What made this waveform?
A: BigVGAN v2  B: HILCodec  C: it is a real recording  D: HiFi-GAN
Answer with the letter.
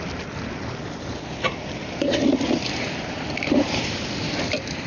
A